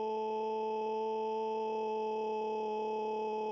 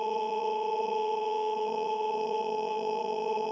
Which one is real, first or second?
first